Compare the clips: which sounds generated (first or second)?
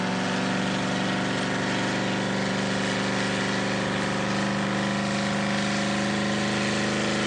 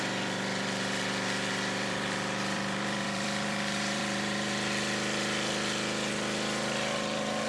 second